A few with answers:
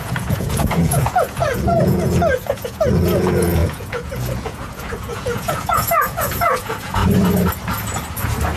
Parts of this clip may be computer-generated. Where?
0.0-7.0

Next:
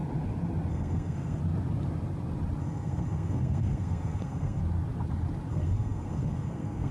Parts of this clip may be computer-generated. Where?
0.7-1.4; 2.6-4.6; 5.5-6.9